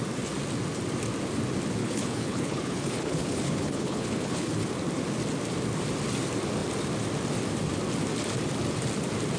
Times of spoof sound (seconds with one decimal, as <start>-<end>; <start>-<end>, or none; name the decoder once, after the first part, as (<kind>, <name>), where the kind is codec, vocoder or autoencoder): 1.8-4.6 (codec, HILCodec)